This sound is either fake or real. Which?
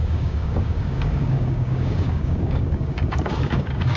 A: fake